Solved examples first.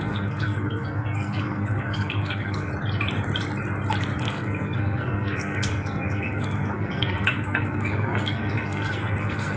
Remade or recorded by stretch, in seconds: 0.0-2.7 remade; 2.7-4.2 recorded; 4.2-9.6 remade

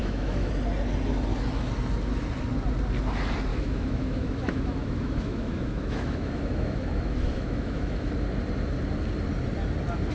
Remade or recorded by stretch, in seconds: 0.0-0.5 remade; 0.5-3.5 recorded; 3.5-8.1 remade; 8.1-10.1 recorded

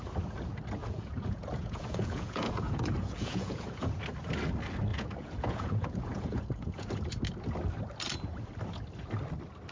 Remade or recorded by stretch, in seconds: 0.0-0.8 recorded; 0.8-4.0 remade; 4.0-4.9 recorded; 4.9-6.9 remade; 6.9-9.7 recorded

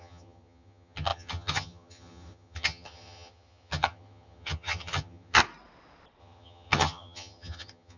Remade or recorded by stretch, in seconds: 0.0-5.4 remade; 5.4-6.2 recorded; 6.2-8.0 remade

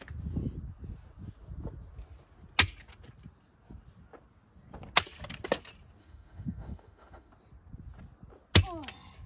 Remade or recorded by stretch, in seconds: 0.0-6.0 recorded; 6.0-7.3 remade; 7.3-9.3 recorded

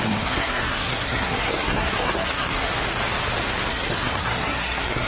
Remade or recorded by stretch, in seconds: 0.0-2.7 remade; 2.7-3.7 recorded; 3.7-5.1 remade

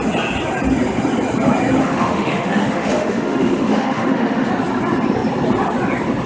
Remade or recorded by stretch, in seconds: 0.0-1.8 recorded; 1.8-4.5 remade; 4.5-6.3 recorded

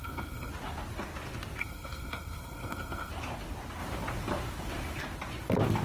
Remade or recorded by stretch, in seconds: 0.0-0.5 remade; 0.5-1.6 recorded; 1.6-3.1 remade; 3.1-5.8 recorded